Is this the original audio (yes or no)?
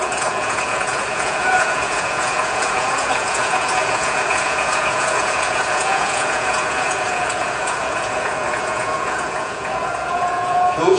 no